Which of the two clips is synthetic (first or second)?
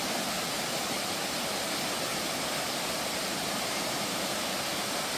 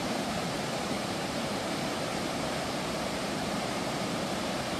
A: second